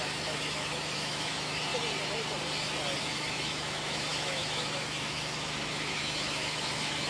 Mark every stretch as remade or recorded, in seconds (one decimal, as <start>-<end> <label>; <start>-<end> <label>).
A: 0.0-1.7 remade; 1.7-3.0 recorded; 3.0-7.1 remade